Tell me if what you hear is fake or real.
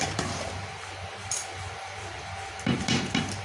fake